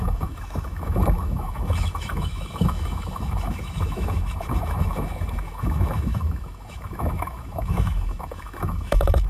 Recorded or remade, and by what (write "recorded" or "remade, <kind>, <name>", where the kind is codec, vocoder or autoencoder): remade, autoencoder, DAC-VAE